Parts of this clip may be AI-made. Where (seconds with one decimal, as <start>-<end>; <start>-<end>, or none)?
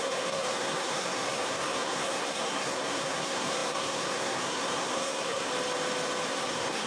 0.0-5.5; 6.3-6.9